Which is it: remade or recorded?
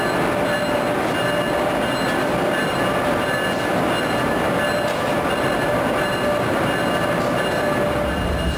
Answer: recorded